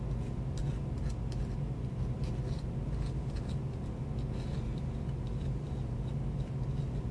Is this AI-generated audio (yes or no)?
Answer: no